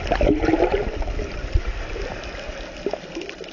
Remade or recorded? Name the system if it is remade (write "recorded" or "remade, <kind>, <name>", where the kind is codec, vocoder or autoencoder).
recorded